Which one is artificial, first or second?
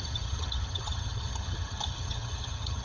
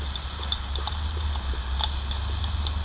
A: first